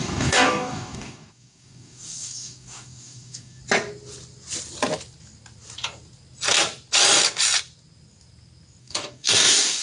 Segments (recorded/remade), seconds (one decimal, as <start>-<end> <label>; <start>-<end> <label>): 0.0-3.6 remade; 3.6-8.8 recorded; 8.8-9.8 remade